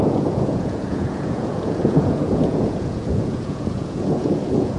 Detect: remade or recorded remade